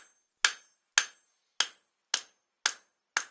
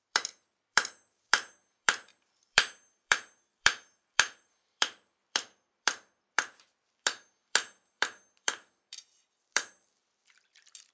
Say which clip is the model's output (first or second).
second